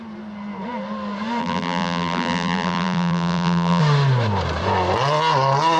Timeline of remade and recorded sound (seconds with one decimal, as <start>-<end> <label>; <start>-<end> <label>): 0.0-1.4 recorded; 1.4-3.8 remade; 3.8-5.8 recorded